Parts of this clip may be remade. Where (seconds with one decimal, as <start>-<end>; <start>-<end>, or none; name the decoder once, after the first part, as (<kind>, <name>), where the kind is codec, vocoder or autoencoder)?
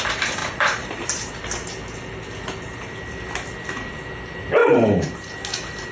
0.4-1.3 (vocoder, BigVGAN v2); 4.6-5.3